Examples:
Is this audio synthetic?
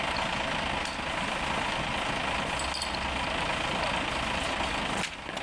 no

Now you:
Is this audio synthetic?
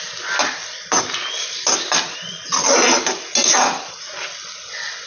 no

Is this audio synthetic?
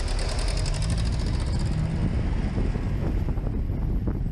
no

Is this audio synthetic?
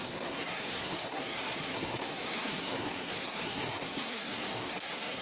yes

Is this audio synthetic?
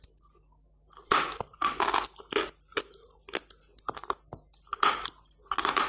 no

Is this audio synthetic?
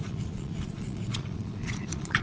yes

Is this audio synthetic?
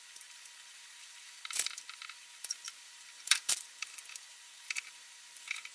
yes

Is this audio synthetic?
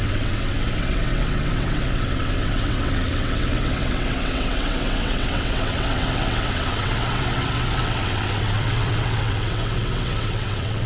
yes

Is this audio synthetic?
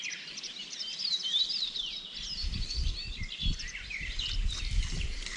no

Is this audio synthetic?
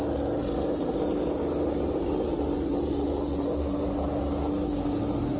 no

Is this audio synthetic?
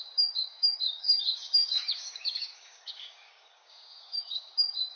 yes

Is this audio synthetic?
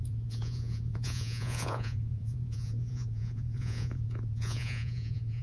yes